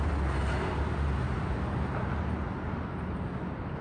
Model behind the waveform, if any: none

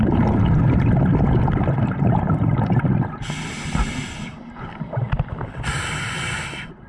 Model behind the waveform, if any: none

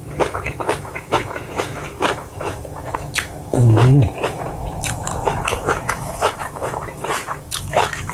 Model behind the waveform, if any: autoencoder, DAC-VAE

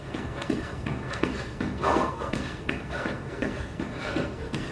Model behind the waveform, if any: codec, SNAC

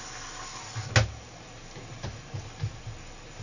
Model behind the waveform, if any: none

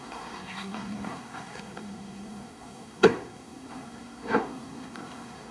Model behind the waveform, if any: codec, SNAC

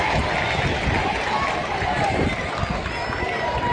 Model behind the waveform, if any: none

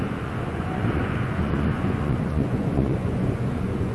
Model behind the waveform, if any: vocoder, Vocos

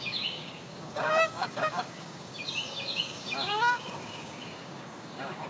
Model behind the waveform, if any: codec, DAC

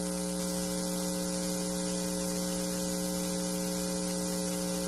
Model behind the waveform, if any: none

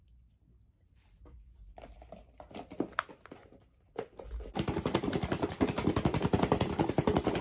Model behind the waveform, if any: none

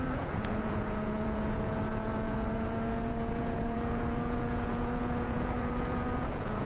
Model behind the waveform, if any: vocoder, Vocos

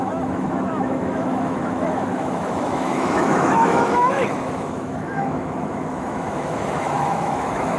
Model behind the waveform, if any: autoencoder, DAC-VAE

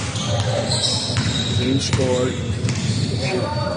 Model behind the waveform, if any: none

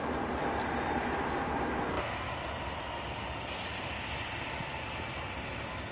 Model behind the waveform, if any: none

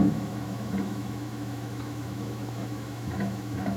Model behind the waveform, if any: autoencoder, DAC-VAE